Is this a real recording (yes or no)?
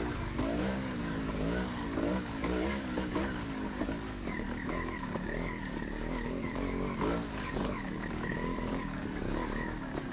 no